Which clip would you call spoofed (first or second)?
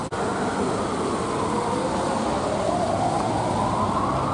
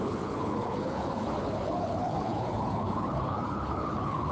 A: second